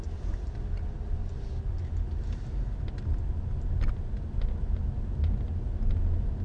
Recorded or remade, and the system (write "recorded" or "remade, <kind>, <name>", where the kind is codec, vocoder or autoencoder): recorded